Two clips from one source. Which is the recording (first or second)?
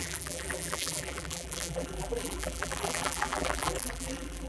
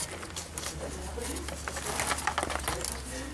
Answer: second